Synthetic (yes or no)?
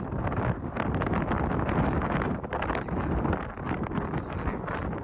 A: no